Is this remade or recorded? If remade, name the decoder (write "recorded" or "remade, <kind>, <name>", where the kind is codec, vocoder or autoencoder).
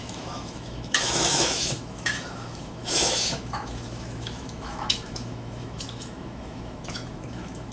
remade, autoencoder, DAC-VAE